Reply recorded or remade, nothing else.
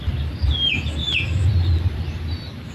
recorded